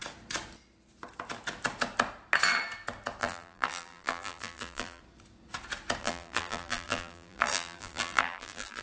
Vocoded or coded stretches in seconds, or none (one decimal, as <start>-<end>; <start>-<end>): 3.2-5.0; 6.0-8.8